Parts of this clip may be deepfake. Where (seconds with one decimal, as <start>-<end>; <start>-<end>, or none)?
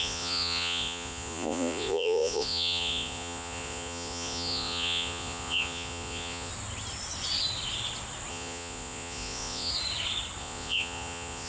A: 0.0-6.5; 8.3-9.7; 10.4-11.5